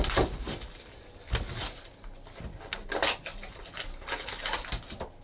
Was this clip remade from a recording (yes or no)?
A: no